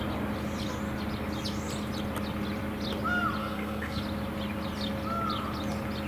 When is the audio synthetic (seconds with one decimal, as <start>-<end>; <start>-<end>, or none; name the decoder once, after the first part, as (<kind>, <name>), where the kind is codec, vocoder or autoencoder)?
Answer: 3.4-4.0 (codec, SNAC)